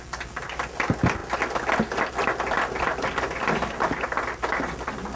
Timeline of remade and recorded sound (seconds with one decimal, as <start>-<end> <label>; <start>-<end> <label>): 0.0-5.2 recorded